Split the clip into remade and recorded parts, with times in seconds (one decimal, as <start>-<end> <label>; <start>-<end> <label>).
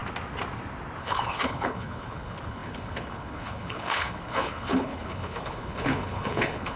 0.0-1.0 recorded; 1.0-6.8 remade